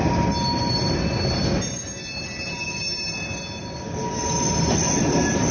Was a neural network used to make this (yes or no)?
no